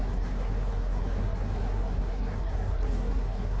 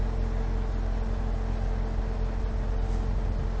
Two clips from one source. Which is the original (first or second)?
second